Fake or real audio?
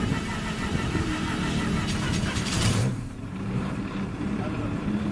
fake